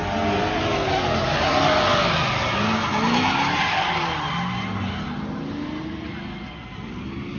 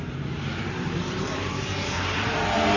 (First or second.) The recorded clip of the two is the first